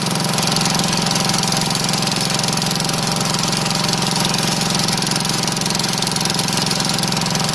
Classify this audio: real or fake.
real